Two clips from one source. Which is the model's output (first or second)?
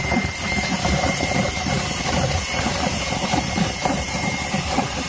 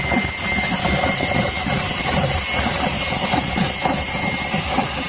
first